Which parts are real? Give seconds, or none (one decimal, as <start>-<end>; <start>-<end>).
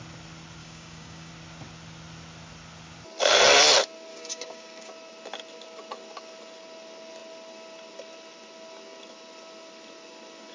0.0-0.6; 1.3-4.1; 4.9-10.5